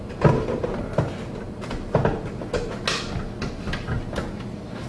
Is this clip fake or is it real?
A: real